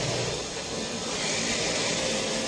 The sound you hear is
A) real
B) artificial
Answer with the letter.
A